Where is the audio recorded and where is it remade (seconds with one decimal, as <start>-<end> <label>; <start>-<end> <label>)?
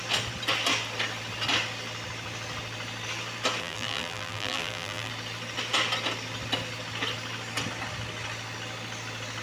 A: 0.0-3.6 recorded; 3.6-5.1 remade; 5.1-9.4 recorded